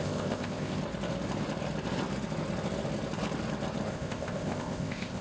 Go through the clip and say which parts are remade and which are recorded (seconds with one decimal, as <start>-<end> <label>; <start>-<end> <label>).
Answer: 0.0-0.8 remade; 0.8-3.9 recorded; 3.9-5.2 remade